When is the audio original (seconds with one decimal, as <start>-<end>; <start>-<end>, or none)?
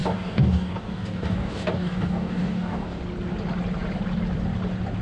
3.0-5.0